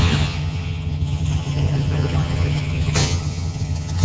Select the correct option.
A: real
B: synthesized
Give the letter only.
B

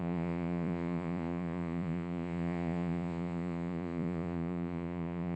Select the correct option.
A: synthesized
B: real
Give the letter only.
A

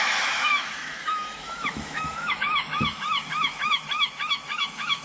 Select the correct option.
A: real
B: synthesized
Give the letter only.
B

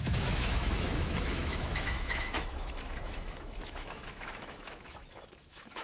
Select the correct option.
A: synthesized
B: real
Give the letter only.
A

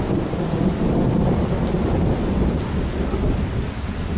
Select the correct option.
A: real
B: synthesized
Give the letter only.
A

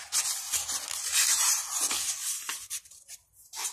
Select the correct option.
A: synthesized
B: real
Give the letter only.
B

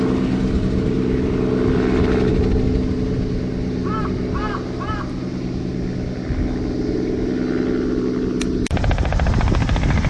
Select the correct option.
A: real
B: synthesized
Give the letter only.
A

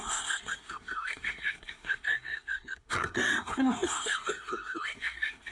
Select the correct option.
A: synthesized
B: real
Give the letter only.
A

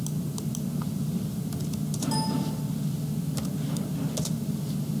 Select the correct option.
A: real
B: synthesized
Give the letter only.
A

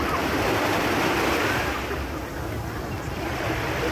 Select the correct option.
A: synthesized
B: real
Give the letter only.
B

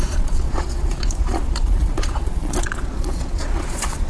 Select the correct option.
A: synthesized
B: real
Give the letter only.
A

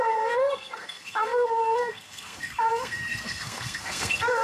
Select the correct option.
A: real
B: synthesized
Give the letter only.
B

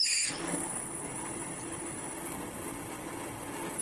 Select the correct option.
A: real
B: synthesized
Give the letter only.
A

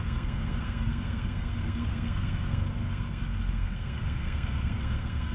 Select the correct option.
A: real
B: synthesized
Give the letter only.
B